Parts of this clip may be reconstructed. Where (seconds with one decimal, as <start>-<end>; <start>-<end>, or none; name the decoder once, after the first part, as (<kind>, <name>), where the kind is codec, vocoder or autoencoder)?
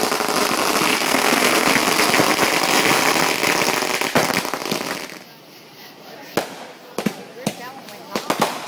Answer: 0.9-1.7 (codec, SNAC)